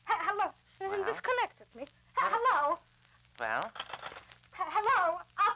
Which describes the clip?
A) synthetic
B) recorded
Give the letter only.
B